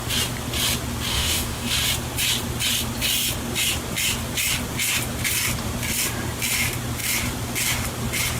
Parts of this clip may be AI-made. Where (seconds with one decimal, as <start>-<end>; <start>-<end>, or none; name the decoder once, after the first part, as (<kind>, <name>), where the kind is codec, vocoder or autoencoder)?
1.1-1.7 (autoencoder, DAC-VAE)